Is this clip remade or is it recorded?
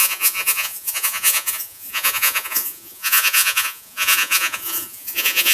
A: remade